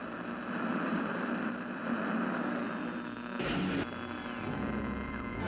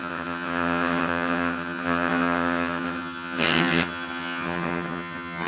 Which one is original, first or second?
first